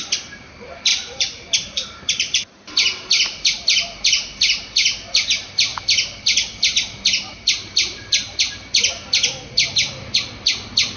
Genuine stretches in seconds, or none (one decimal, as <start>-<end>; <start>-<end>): 0.0-0.9; 2.7-11.0

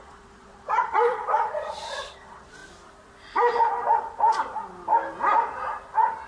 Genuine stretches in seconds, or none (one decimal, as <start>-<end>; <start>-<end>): 2.6-6.3